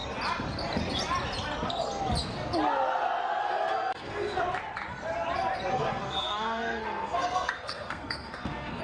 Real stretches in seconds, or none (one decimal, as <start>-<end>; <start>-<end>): 0.0-3.4; 4.4-5.7